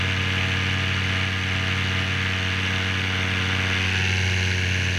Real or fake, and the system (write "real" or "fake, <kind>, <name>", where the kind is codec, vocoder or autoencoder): real